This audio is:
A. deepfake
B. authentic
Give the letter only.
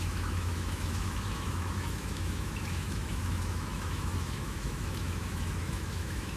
A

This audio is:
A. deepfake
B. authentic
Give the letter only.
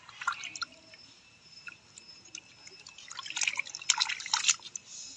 B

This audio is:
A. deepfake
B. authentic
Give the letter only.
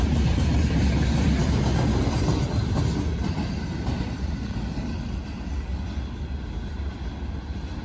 B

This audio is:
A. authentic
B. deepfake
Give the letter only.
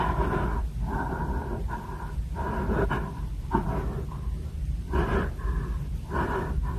A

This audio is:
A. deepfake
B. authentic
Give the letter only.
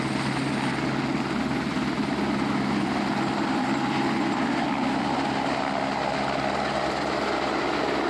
B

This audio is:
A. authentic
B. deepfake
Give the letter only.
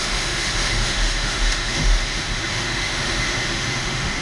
B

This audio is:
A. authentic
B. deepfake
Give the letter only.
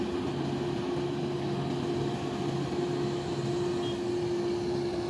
A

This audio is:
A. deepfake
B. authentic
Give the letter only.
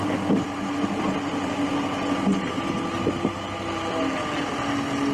B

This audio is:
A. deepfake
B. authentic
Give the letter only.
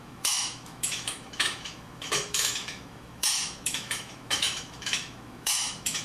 A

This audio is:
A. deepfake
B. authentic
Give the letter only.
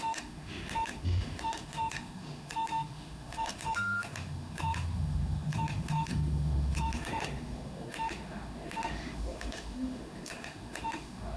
A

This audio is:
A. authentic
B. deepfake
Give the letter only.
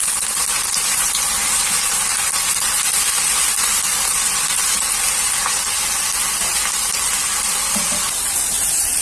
A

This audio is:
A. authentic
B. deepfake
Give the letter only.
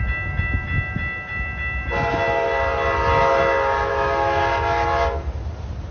A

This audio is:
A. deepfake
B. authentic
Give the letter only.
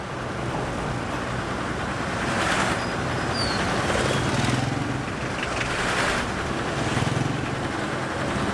B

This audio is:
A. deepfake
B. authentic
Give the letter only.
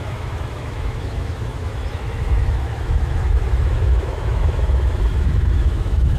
A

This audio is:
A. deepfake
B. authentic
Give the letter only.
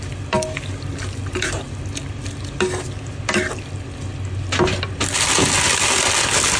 B